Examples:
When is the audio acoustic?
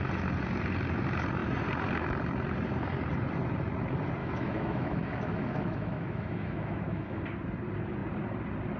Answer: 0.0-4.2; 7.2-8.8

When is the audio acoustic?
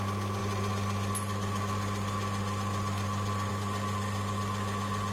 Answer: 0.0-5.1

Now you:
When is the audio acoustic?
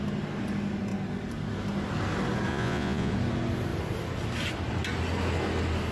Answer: 0.0-2.5; 3.1-5.9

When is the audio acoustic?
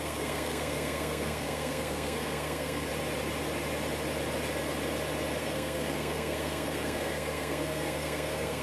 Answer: 2.9-5.4